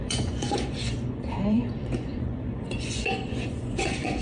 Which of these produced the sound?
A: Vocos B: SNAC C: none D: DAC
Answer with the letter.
A